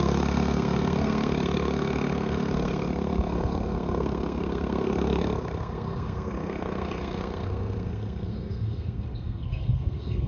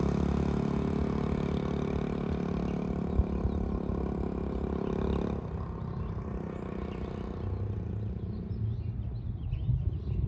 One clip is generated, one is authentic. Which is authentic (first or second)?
second